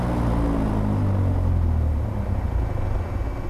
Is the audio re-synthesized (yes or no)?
no